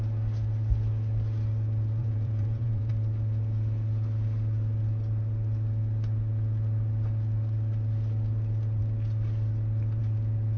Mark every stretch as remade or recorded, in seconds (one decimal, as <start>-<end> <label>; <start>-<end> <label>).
0.0-2.0 recorded; 2.0-2.9 remade; 2.9-10.6 recorded